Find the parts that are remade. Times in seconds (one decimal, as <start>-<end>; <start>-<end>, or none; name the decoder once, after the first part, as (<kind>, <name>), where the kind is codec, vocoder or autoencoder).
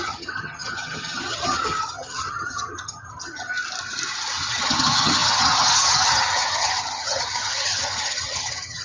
0.0-3.5 (vocoder, HiFi-GAN); 4.5-8.8